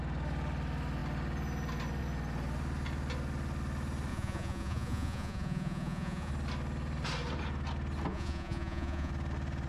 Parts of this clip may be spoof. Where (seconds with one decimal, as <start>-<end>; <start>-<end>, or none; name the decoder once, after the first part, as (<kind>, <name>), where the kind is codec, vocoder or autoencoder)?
4.1-6.3 (vocoder, Vocos); 8.1-9.1